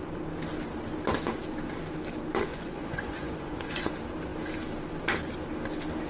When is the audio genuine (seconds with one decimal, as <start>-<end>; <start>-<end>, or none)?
0.0-2.5; 3.9-6.1